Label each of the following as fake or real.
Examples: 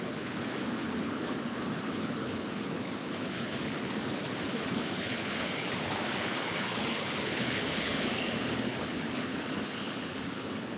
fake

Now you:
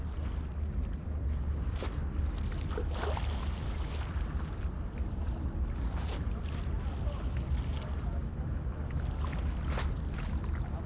real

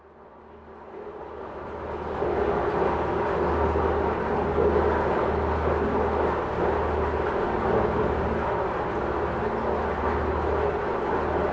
real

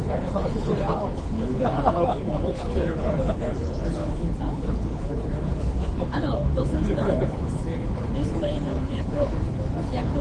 fake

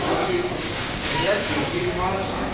fake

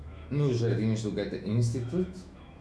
fake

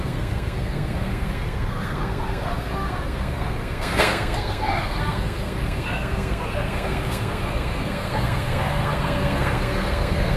fake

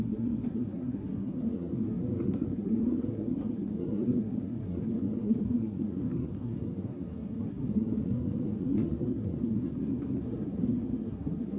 fake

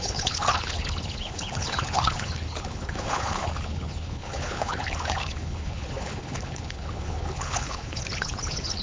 fake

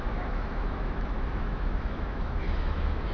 fake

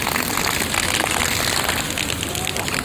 real